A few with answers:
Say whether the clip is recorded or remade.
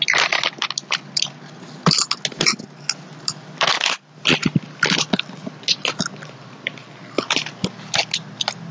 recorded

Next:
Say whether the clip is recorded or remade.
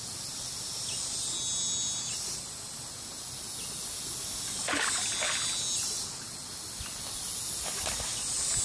recorded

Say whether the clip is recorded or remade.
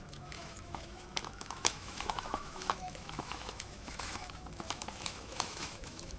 remade